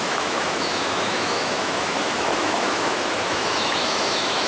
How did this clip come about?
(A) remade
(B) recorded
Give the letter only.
A